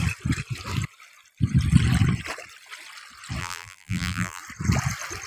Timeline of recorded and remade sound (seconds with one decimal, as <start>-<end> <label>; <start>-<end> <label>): 0.0-3.4 recorded; 3.4-4.4 remade; 4.4-5.3 recorded